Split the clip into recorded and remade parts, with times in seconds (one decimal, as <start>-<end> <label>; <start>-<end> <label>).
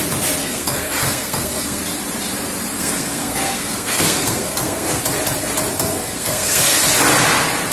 0.0-0.4 recorded; 0.4-1.8 remade; 1.8-2.7 recorded; 2.7-5.0 remade; 5.0-5.7 recorded; 5.7-6.8 remade; 6.8-7.7 recorded